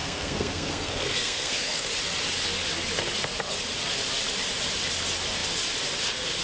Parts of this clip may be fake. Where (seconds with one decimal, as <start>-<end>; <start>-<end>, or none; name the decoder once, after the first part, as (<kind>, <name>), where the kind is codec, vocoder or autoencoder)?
0.0-1.9 (codec, SNAC)